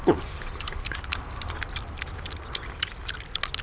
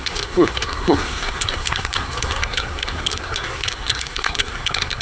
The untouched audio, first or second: first